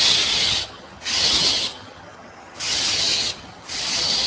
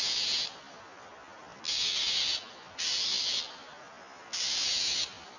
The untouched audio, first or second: second